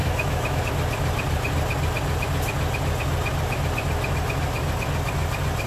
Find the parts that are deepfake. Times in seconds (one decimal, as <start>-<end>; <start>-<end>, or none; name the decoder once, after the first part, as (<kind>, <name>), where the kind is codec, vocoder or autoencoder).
0.0-0.6 (autoencoder, DAC-VAE)